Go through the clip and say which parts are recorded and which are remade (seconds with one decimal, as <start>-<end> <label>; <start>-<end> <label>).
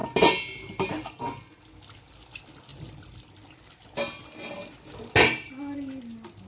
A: 0.0-6.5 recorded